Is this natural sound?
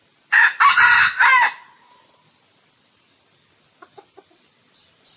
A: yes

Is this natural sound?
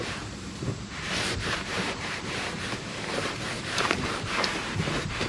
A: no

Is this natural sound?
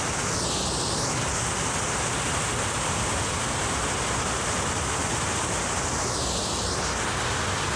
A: yes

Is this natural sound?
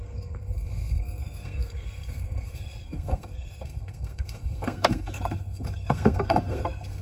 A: no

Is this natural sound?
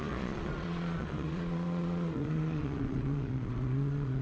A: no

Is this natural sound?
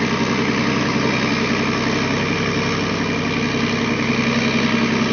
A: yes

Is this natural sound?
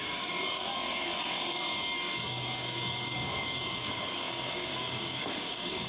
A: no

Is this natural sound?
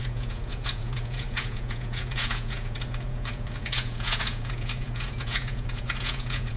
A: no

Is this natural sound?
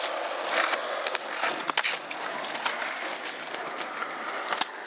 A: yes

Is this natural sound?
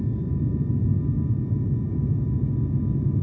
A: yes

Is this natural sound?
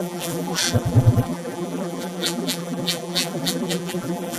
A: no